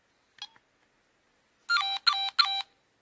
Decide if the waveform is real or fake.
real